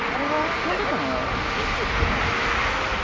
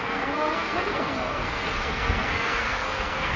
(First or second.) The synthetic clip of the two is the second